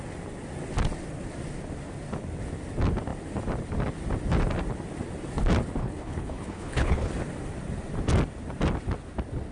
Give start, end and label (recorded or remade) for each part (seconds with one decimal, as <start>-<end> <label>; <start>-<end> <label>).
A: 0.0-5.8 recorded; 5.8-7.1 remade; 7.1-9.5 recorded